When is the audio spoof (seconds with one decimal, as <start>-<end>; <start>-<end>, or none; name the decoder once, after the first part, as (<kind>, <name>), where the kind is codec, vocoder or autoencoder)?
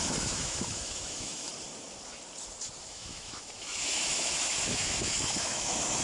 0.0-1.5 (autoencoder, DAC-VAE); 2.8-6.0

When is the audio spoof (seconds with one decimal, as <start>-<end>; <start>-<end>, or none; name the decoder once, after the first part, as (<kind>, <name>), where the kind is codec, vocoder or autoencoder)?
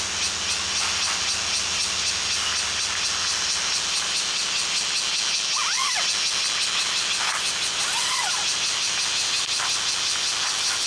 none